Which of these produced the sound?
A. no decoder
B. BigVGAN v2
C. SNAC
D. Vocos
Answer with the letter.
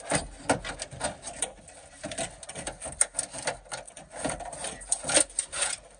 A